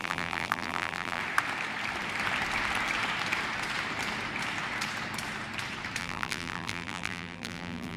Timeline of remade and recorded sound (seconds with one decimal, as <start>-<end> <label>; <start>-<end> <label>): 0.0-1.2 remade; 1.2-6.0 recorded; 6.0-8.0 remade